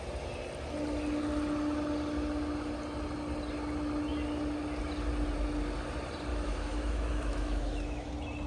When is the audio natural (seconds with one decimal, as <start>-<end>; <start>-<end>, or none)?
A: 0.0-6.3; 8.1-8.5